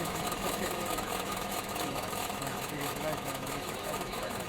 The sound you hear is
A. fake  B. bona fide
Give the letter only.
A